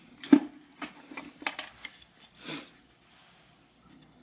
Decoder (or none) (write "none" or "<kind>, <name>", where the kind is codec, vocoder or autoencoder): none